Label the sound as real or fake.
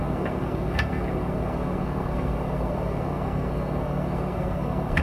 fake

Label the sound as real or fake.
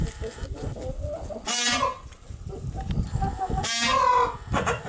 real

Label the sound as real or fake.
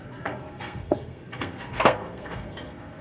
fake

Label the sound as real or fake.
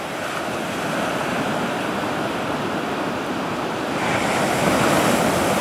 real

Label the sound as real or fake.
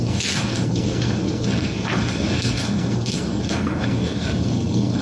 fake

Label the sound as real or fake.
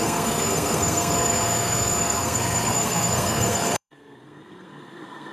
fake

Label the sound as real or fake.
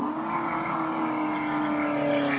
real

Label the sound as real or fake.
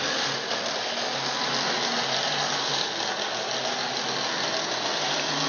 real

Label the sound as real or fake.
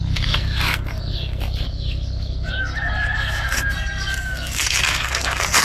fake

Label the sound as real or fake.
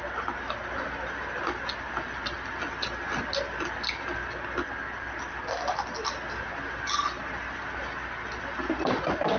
real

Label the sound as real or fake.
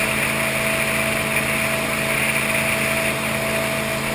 real